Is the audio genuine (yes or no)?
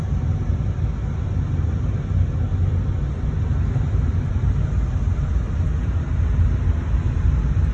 yes